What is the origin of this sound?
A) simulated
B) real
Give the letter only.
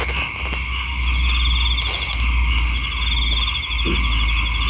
B